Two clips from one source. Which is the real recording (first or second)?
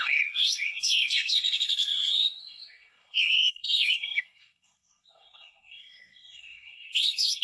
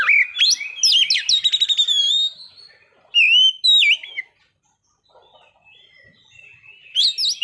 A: second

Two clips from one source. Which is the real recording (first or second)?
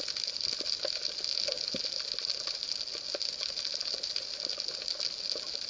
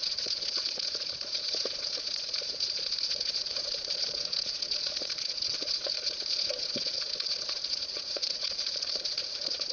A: first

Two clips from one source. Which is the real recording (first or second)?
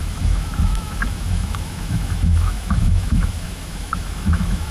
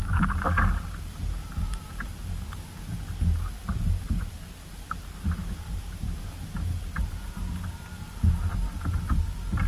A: second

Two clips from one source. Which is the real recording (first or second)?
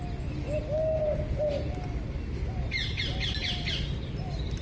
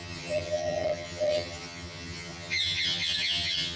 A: first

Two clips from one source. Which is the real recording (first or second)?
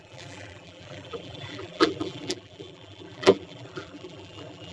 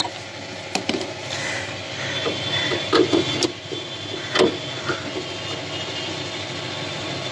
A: second